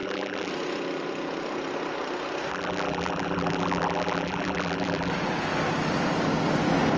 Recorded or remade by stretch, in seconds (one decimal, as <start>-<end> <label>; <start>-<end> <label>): 0.0-0.5 remade; 0.5-2.5 recorded; 2.5-5.1 remade; 5.1-7.0 recorded